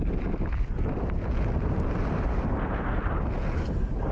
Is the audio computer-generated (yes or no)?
no